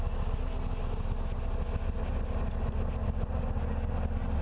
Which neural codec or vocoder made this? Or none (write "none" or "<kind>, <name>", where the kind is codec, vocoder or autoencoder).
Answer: none